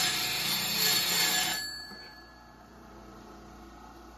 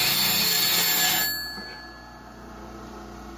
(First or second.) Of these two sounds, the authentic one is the second